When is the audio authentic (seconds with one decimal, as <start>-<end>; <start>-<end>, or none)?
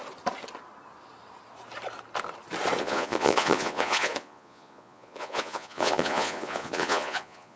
0.0-2.8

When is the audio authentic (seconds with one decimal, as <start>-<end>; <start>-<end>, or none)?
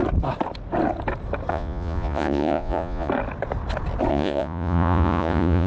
0.0-1.5; 3.1-4.1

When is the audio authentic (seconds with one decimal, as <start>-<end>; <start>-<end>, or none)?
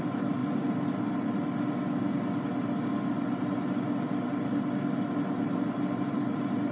0.0-6.7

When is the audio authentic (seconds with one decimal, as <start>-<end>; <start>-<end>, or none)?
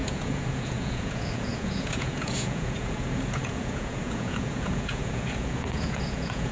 none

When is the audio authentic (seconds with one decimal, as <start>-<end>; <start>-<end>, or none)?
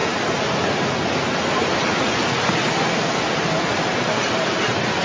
0.0-5.0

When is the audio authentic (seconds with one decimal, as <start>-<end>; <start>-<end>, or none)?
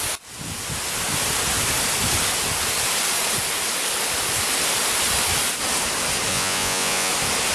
0.0-6.3; 7.1-7.5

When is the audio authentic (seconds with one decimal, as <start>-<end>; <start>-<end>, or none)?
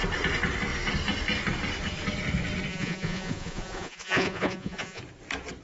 0.0-2.7; 5.0-5.6